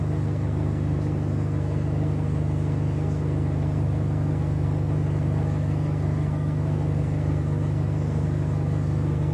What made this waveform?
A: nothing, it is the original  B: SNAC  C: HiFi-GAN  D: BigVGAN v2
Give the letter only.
B